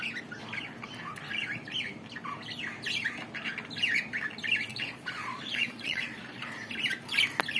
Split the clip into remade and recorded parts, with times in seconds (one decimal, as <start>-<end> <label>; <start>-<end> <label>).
0.0-4.7 recorded; 4.7-6.5 remade; 6.5-7.6 recorded